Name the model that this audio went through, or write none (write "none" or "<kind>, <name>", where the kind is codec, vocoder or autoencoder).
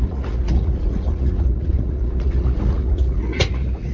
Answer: vocoder, Vocos